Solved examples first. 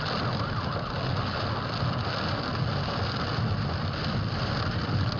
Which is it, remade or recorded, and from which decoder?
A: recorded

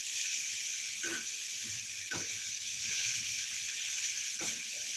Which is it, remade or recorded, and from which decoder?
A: remade, codec, HILCodec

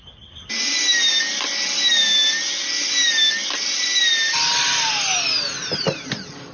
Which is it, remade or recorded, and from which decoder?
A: recorded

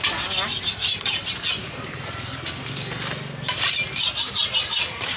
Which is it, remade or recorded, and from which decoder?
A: recorded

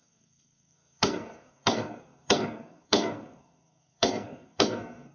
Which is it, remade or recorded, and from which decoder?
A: remade, codec, SNAC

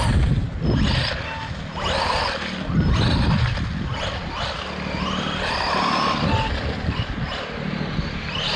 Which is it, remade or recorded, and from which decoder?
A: recorded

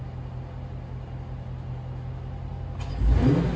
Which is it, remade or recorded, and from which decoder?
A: recorded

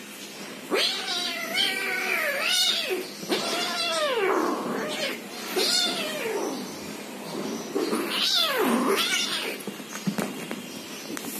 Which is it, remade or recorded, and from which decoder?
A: recorded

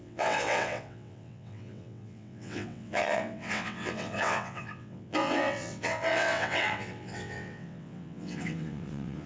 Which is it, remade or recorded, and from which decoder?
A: remade, vocoder, WaveNeXt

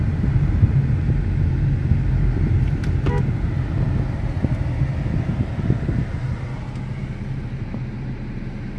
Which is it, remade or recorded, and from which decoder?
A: recorded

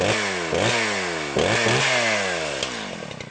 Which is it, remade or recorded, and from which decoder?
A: recorded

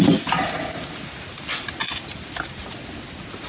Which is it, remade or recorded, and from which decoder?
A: recorded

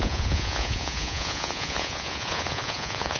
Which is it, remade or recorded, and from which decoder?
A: remade, vocoder, Vocos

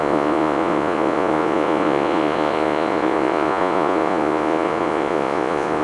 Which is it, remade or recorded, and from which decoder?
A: remade, vocoder, Vocos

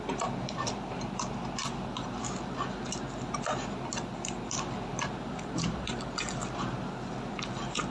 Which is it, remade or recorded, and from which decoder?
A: recorded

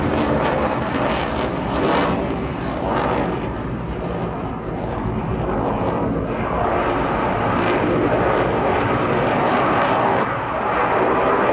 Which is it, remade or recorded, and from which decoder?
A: recorded